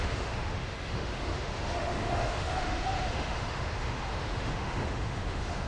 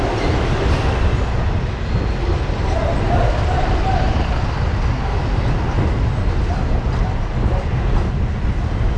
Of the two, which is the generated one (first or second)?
first